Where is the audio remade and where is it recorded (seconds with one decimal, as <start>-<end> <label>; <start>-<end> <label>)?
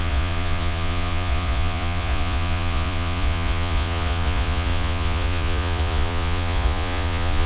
0.0-7.5 remade